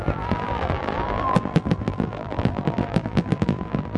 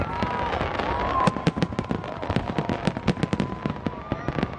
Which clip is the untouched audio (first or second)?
second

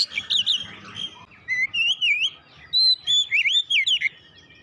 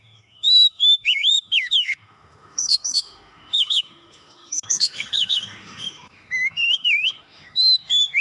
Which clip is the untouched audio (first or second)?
first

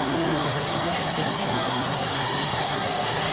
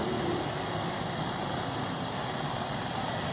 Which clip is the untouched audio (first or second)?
second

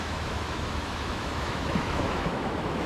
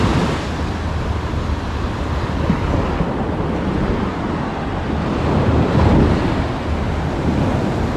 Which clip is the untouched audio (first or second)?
second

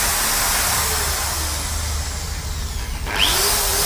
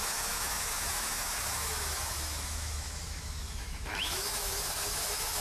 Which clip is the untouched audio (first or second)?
first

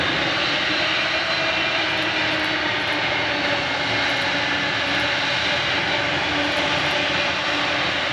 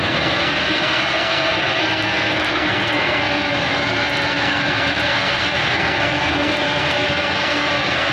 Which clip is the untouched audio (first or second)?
first